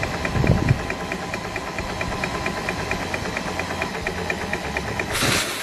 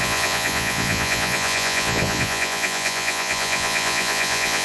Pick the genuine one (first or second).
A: first